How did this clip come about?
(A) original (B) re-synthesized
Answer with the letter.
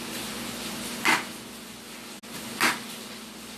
A